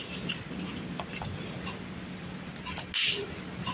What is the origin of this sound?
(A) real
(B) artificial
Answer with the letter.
A